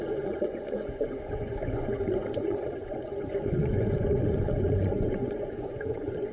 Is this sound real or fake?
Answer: fake